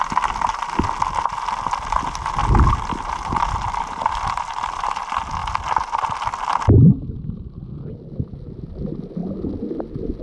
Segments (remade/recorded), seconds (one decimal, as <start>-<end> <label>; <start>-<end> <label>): 0.0-10.2 recorded